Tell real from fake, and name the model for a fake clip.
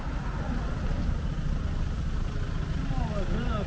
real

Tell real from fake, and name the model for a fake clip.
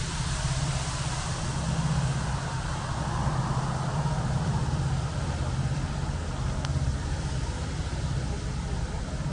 real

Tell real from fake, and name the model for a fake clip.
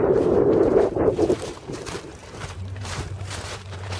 fake, vocoder, BigVGAN v2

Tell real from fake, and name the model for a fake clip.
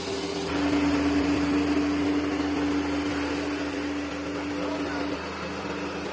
real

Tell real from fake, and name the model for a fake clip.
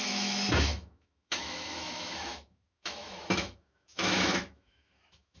fake, autoencoder, DAC-VAE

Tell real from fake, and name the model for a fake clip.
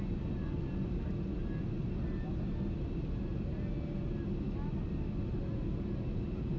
real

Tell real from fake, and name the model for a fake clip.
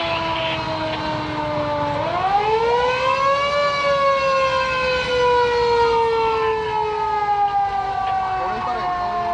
real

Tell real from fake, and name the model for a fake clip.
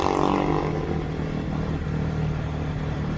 real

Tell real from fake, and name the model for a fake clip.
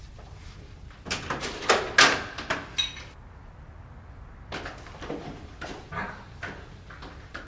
real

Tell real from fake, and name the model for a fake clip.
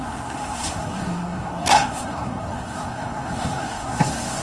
fake, codec, SNAC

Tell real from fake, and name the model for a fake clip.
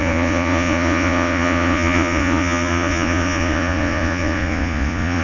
fake, vocoder, Vocos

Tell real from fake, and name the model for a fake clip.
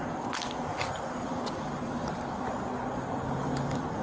real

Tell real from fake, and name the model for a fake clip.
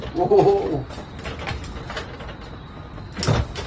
real